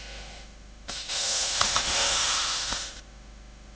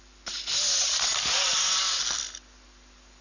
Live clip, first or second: second